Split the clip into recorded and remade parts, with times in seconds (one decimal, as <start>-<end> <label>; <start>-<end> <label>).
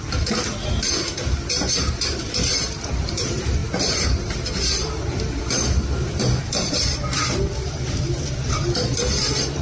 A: 0.0-9.6 remade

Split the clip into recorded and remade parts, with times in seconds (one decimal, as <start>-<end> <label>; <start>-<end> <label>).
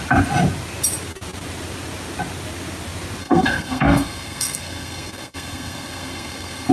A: 0.0-3.2 recorded; 3.2-6.7 remade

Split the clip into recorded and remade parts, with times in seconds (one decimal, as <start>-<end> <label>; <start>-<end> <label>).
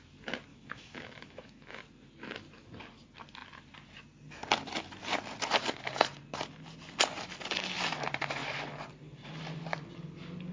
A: 0.0-0.5 recorded; 0.5-1.8 remade; 1.8-10.5 recorded